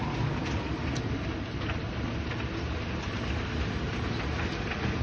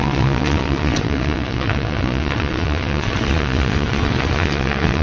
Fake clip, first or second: second